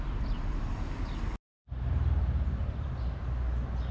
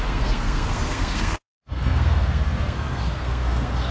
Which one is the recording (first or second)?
first